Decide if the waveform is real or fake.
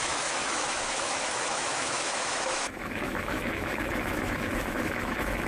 fake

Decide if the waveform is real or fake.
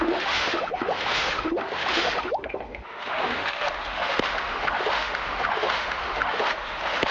fake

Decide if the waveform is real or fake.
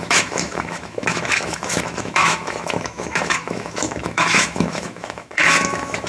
fake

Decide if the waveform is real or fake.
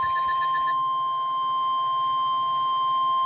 fake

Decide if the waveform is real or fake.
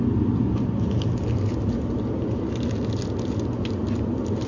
real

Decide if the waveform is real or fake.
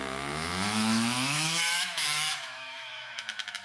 fake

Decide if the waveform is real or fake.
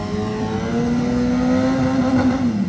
real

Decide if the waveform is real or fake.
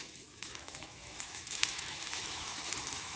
fake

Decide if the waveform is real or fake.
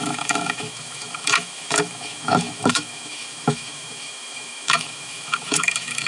fake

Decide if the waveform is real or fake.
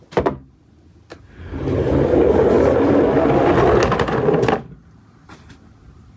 real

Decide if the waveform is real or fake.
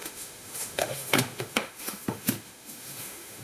fake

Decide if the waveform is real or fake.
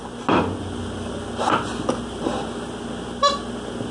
real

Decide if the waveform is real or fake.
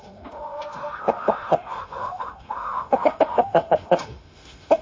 fake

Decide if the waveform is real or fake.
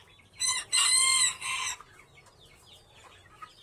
real